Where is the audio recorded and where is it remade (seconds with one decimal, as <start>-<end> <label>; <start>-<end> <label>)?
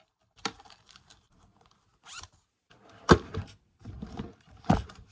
0.0-5.1 remade